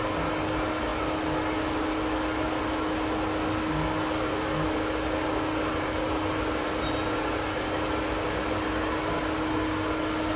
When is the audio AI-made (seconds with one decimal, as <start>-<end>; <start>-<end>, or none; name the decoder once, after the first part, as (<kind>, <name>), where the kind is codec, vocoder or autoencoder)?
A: none